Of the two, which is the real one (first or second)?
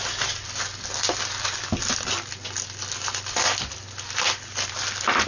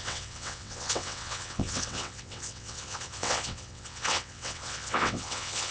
first